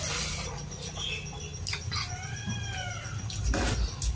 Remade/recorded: recorded